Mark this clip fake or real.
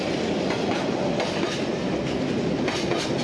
real